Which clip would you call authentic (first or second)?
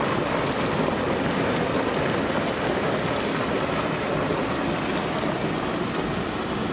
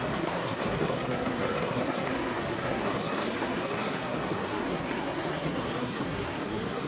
first